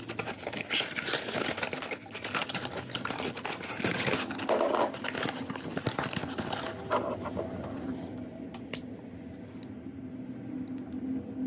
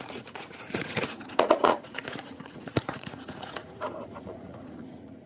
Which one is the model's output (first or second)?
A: second